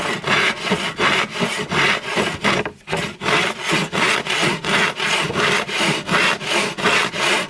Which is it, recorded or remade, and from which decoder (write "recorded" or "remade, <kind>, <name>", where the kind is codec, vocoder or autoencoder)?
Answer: recorded